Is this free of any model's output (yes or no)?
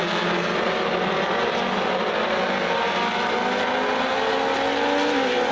yes